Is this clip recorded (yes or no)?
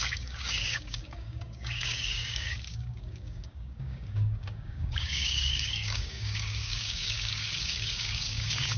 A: no